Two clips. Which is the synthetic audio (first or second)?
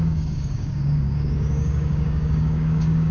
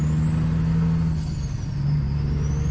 first